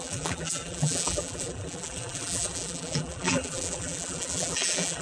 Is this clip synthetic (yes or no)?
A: yes